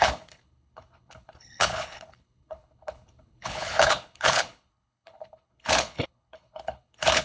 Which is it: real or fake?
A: fake